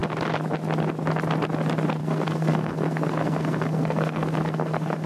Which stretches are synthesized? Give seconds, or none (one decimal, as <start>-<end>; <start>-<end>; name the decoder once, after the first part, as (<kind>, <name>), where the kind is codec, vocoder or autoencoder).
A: 2.0-5.1 (codec, SNAC)